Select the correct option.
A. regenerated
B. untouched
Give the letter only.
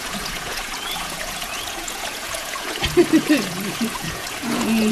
A